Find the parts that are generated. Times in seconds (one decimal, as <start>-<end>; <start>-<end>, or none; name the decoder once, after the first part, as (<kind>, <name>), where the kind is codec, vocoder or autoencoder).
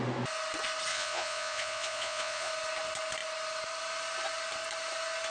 0.9-2.5 (vocoder, Vocos)